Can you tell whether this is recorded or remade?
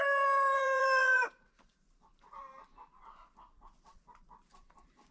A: remade